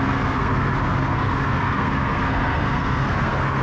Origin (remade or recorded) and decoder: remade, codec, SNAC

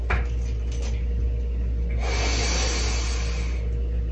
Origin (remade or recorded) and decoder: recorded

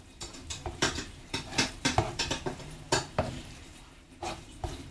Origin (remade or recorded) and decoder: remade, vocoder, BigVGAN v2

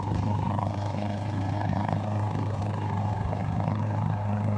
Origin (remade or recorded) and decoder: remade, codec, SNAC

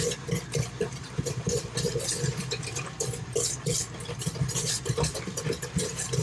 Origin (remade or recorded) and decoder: remade, vocoder, BigVGAN v2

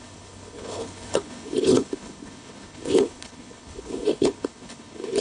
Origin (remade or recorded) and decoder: remade, codec, HILCodec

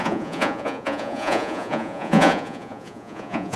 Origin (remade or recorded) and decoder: remade, vocoder, Vocos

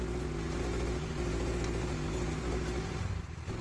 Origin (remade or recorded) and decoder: recorded